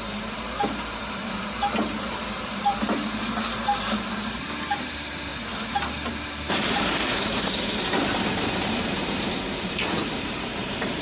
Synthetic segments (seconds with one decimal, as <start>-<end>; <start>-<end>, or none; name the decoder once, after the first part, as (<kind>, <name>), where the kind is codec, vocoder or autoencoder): 0.0-5.3 (vocoder, BigVGAN v2); 6.1-11.0